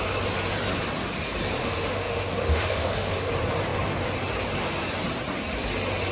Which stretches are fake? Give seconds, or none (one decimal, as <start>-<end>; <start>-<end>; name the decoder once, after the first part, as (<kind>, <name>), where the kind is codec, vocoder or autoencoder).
1.6-3.3 (autoencoder, DAC-VAE)